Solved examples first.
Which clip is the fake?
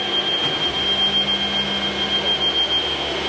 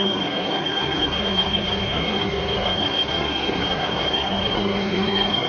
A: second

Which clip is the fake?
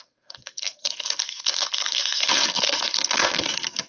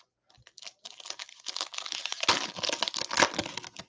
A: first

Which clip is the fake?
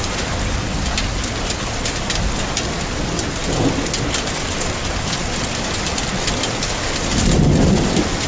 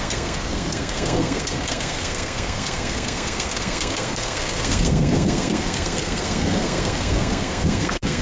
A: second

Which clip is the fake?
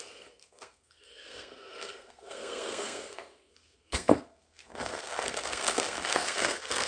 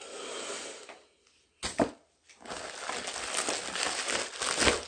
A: first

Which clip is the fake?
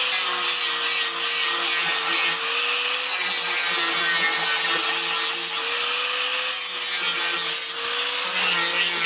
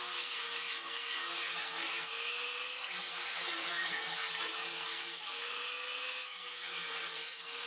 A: second